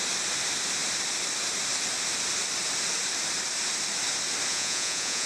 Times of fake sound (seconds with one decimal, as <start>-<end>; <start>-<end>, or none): 4.5-5.3

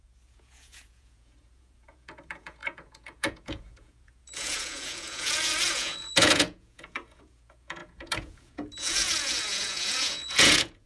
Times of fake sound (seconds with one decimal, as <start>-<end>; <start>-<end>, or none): 0.0-10.9

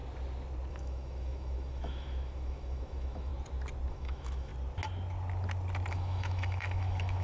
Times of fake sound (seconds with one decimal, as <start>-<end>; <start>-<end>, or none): 0.7-3.3; 3.9-4.5; 5.9-7.2

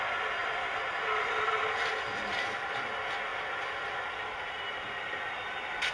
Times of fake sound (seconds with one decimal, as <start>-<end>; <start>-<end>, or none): none